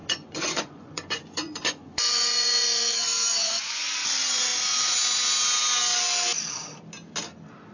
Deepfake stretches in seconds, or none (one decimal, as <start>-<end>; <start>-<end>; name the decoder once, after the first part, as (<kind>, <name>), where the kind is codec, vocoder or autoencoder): 0.0-3.9 (vocoder, Vocos)